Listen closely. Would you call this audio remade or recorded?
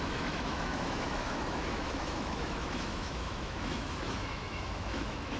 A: remade